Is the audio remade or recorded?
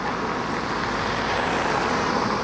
recorded